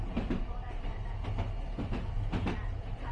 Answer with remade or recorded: recorded